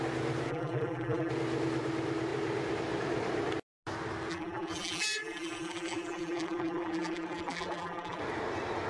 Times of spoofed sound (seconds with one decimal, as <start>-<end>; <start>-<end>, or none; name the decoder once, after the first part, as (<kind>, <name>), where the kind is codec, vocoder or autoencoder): 0.5-1.3 (vocoder, BigVGAN v2); 4.3-8.2